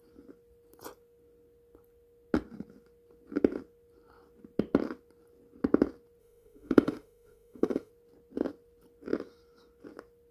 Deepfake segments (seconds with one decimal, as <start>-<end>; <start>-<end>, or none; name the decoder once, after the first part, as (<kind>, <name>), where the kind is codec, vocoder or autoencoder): 6.2-7.9 (autoencoder, DAC-VAE)